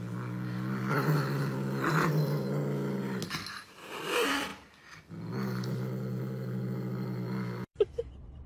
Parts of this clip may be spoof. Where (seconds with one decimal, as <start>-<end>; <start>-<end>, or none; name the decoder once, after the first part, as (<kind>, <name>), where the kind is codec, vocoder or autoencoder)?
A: none

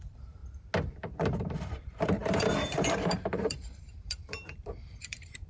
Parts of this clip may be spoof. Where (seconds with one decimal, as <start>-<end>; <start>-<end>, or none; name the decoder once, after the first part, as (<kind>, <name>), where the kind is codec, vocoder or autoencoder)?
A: 0.0-0.4 (vocoder, BigVGAN v2); 0.9-5.5

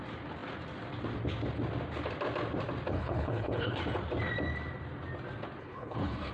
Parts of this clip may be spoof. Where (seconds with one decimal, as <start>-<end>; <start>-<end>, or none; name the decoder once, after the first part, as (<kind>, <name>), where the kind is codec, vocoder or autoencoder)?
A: 2.9-3.8 (codec, HILCodec); 5.6-6.3

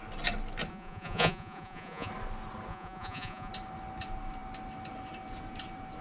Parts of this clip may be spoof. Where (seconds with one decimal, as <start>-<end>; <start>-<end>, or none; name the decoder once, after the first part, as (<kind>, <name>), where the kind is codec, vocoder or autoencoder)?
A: 0.7-2.1 (vocoder, Vocos); 2.7-3.5

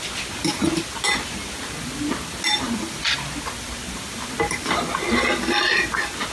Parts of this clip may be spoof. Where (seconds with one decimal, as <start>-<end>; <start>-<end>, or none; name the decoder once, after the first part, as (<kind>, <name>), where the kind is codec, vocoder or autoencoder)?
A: none

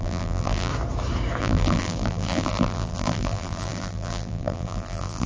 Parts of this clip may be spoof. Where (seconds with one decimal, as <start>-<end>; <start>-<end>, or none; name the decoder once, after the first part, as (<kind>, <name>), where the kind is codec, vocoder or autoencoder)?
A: 0.0-0.7 (vocoder, BigVGAN v2); 1.4-5.3

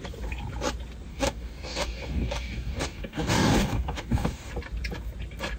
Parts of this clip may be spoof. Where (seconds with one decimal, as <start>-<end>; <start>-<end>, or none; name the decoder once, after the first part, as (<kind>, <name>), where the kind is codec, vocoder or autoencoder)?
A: 1.1-4.5 (codec, DAC)

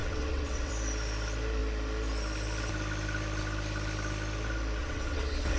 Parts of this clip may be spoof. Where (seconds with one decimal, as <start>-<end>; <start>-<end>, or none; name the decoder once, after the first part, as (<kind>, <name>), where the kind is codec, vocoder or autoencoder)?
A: 0.0-0.7 (vocoder, WaveNeXt); 4.8-5.6